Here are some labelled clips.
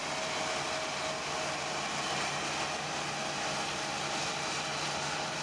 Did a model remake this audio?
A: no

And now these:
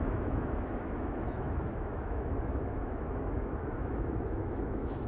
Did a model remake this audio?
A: yes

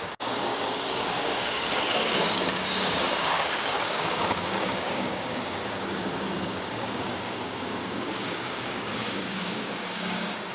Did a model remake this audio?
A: yes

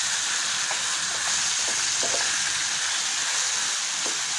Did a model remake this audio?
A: no